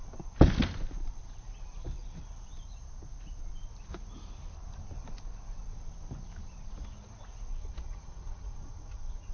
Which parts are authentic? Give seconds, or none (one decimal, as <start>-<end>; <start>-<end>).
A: 0.0-7.5